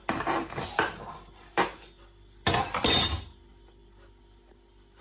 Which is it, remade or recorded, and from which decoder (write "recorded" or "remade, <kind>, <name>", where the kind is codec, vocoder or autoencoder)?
recorded